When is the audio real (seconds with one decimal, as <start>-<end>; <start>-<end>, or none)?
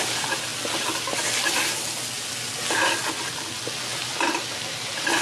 0.0-5.2